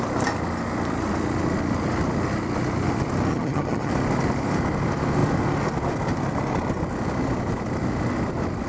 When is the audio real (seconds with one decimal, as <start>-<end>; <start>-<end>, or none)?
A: 0.0-3.3; 3.9-8.7